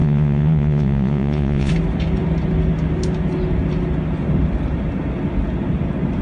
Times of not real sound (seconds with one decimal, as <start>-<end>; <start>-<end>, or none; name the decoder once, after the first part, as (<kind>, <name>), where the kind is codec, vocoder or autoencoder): 0.0-1.7 (vocoder, Vocos)